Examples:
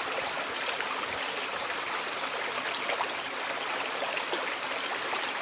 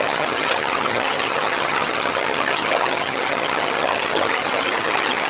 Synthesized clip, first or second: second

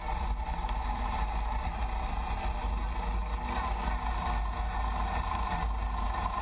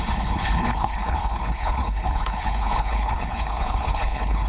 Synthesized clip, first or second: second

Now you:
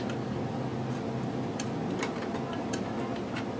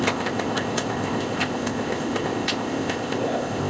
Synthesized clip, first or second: second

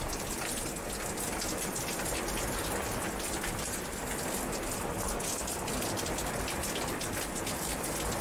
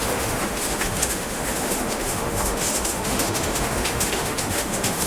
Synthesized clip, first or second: second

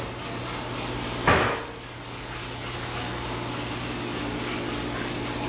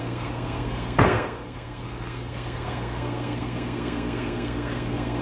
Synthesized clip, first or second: second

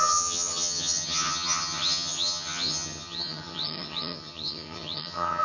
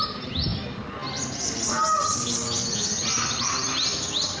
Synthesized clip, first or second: first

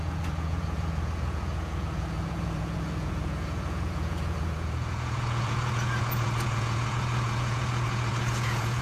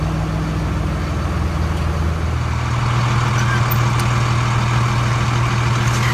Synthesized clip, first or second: first